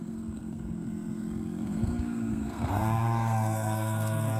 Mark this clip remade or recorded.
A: remade